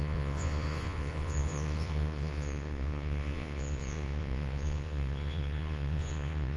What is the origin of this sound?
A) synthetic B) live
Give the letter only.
A